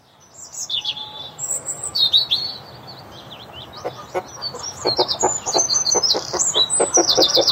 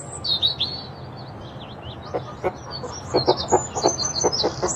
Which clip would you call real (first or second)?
second